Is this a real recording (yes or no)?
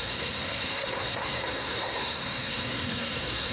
no